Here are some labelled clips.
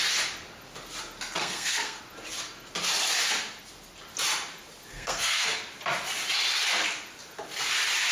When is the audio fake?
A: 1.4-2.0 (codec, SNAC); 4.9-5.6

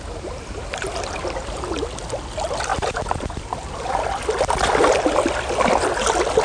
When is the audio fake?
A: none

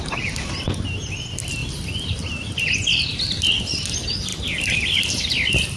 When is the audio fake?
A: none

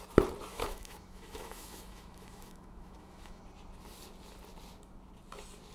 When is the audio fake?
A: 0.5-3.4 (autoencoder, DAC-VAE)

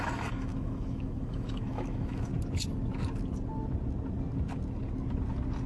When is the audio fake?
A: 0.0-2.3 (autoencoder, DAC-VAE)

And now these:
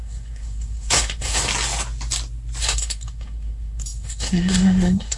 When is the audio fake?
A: 0.0-1.5 (codec, SNAC); 2.6-5.2

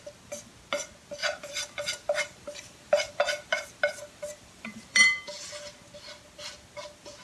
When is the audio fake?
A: 1.2-5.0 (vocoder, BigVGAN v2)

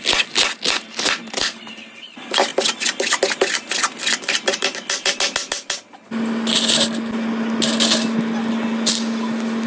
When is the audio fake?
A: none